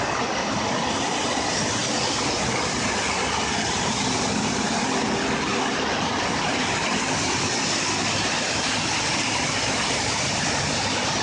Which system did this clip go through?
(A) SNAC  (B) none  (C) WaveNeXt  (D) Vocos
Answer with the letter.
B